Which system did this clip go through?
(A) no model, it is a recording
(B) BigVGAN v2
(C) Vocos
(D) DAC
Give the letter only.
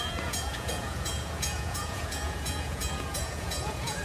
C